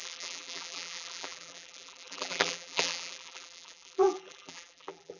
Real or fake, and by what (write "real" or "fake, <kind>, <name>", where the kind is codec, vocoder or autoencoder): fake, vocoder, BigVGAN v2